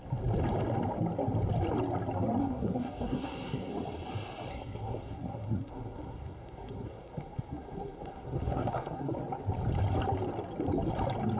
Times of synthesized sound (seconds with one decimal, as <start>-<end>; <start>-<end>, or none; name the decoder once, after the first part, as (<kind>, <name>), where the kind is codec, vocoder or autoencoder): 2.4-3.7 (codec, SNAC); 4.5-9.2